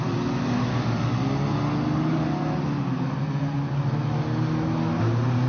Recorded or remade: recorded